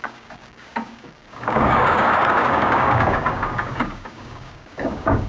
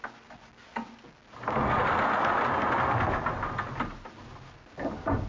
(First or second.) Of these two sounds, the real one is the second